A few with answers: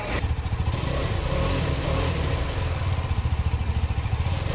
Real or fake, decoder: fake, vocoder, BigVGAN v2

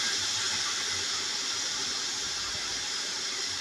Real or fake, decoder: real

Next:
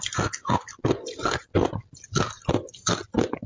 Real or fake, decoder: real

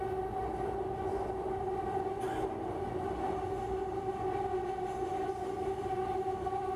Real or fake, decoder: real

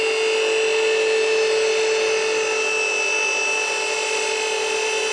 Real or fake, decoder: real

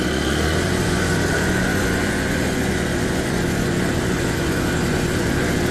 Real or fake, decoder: fake, vocoder, Vocos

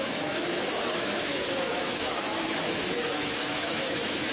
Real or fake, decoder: fake, autoencoder, DAC-VAE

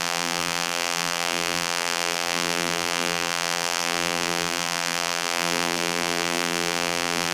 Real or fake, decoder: fake, vocoder, BigVGAN v2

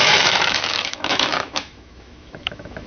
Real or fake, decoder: fake, autoencoder, DAC-VAE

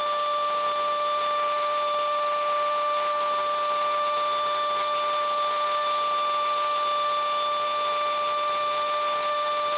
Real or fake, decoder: fake, autoencoder, DAC-VAE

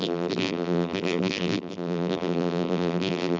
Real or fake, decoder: fake, vocoder, BigVGAN v2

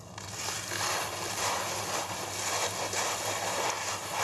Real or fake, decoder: real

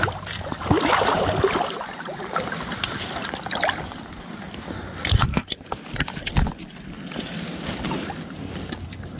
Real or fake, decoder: fake, vocoder, BigVGAN v2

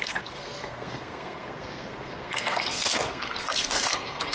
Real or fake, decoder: fake, codec, SNAC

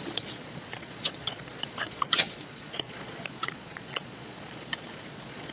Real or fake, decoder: fake, vocoder, Vocos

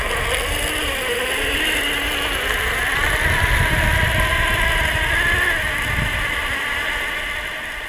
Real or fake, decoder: real